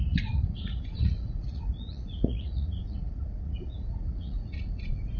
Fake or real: fake